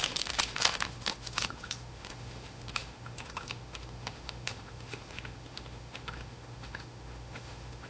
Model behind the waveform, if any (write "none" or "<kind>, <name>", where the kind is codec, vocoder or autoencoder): autoencoder, DAC-VAE